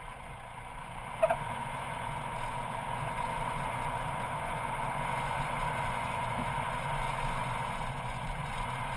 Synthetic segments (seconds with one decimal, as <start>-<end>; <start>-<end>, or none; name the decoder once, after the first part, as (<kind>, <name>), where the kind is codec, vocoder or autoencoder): 0.0-9.0 (vocoder, Vocos)